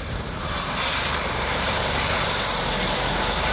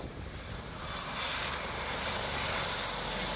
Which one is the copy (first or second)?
first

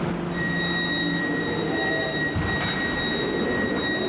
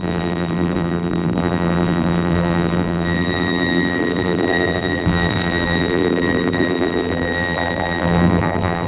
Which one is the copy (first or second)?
second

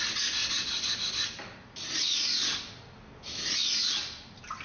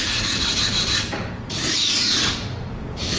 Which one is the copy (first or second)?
second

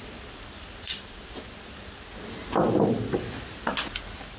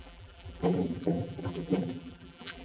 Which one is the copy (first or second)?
second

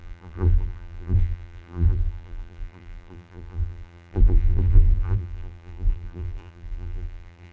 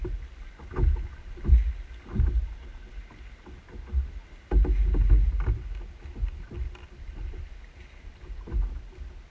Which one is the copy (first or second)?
first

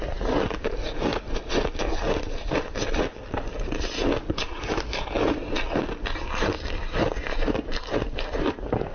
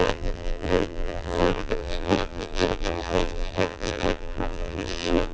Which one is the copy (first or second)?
second